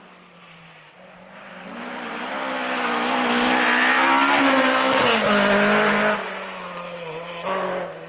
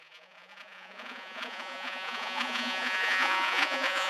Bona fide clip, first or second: first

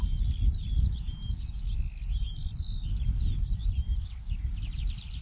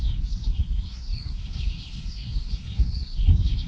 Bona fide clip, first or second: first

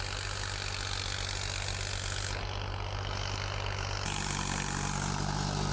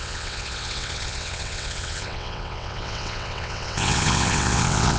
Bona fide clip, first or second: first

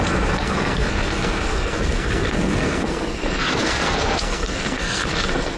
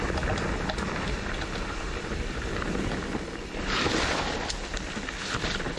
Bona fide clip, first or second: second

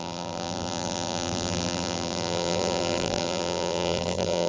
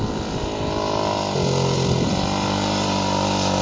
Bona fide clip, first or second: second